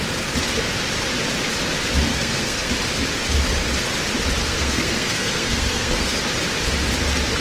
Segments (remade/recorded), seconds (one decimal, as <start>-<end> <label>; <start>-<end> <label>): 0.0-2.1 recorded; 2.1-2.7 remade; 2.7-4.4 recorded; 4.4-6.2 remade; 6.2-7.4 recorded